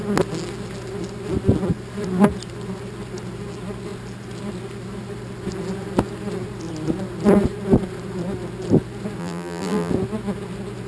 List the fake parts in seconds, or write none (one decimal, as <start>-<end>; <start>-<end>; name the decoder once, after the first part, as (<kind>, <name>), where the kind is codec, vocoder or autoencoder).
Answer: 9.2-9.9 (vocoder, BigVGAN v2)